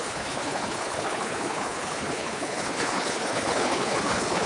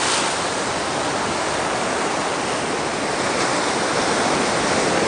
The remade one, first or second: first